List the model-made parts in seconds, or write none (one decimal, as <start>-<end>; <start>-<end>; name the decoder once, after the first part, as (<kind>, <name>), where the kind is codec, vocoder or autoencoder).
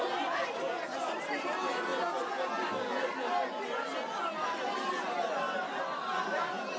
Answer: none